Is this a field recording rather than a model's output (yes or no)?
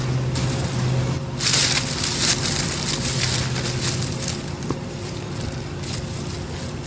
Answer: yes